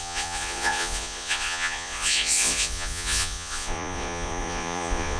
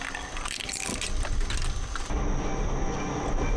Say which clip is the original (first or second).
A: second